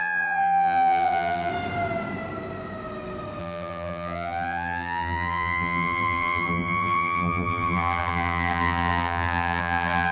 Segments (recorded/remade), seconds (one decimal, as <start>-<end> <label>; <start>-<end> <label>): 0.0-1.5 remade; 1.5-3.4 recorded; 3.4-10.1 remade